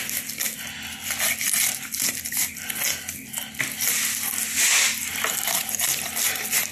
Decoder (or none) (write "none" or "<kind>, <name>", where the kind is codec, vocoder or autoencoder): none